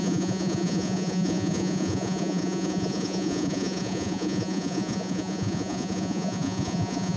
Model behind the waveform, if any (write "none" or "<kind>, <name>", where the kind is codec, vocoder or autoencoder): vocoder, Vocos